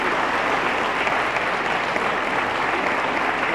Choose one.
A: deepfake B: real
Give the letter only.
B